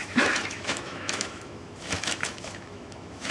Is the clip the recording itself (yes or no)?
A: no